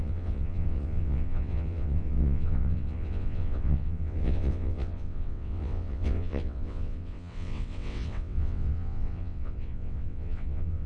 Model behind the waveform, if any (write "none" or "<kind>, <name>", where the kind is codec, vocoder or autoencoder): vocoder, WaveNeXt